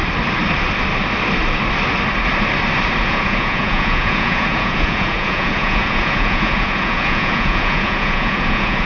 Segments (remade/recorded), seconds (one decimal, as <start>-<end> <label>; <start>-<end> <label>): 0.0-3.0 recorded; 3.0-8.8 remade